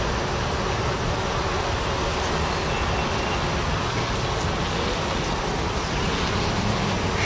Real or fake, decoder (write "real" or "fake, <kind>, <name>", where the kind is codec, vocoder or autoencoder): real